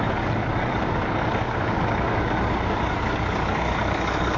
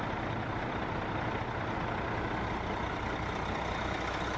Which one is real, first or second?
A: second